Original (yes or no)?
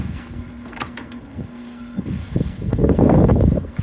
no